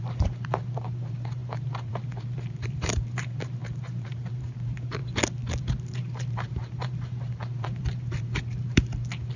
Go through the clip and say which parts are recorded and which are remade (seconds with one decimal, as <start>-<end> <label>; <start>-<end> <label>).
0.0-5.0 remade; 5.0-5.6 recorded; 5.6-9.4 remade